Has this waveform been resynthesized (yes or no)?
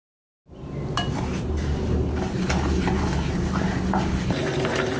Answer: no